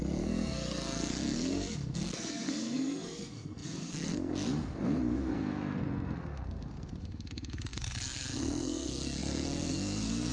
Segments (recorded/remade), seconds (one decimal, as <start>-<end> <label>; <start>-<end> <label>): 0.0-10.3 remade